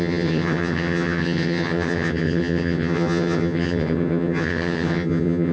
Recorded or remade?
remade